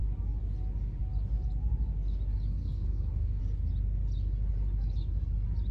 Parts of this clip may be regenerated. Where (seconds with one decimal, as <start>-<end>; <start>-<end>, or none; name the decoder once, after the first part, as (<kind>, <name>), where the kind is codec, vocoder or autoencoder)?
2.6-3.4 (codec, SNAC)